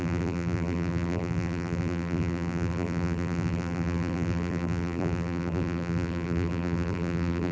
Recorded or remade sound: remade